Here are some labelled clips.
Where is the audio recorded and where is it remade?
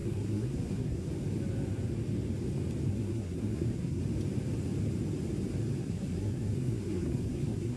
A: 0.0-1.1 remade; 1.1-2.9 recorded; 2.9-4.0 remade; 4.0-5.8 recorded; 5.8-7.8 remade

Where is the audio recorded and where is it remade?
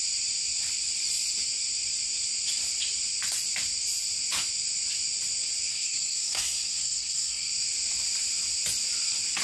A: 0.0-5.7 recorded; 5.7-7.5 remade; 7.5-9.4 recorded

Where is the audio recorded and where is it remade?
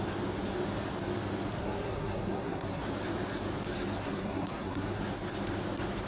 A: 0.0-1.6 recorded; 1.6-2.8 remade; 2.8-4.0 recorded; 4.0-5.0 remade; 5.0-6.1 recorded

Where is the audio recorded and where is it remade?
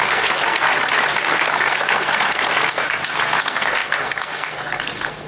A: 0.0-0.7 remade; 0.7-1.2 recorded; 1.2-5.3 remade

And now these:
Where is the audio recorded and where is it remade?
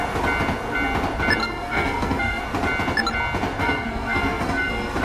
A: 0.0-1.4 recorded; 1.4-2.4 remade; 2.4-3.6 recorded; 3.6-5.0 remade